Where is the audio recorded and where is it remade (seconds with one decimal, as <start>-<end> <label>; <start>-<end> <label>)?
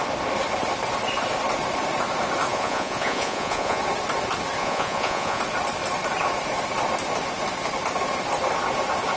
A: 0.0-2.5 recorded; 2.5-3.8 remade; 3.8-4.6 recorded; 4.6-5.4 remade; 5.4-9.2 recorded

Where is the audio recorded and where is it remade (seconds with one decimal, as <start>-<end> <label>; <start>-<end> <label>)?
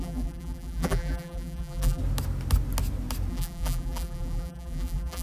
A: 0.0-2.0 remade; 2.0-3.3 recorded; 3.3-5.2 remade